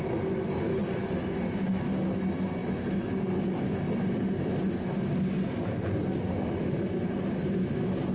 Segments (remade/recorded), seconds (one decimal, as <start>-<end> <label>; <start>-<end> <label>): 0.0-6.3 recorded; 6.3-6.9 remade; 6.9-8.1 recorded